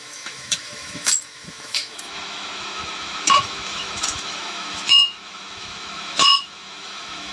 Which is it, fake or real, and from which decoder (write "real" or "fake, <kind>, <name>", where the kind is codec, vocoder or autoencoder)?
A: fake, autoencoder, DAC-VAE